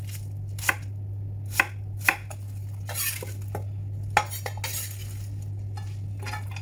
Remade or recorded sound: recorded